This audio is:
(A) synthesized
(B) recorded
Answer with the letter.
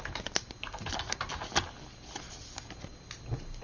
B